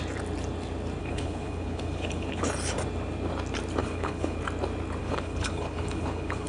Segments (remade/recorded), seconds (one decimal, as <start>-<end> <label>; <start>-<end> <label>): 0.0-1.0 recorded; 1.0-2.4 remade; 2.4-3.8 recorded; 3.8-4.4 remade; 4.4-5.0 recorded; 5.0-6.5 remade